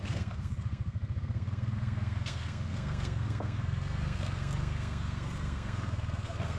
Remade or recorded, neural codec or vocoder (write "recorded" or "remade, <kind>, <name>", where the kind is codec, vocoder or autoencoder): remade, codec, SNAC